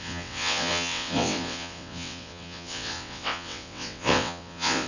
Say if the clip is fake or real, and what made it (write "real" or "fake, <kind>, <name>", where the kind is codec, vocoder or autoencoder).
fake, vocoder, WaveNeXt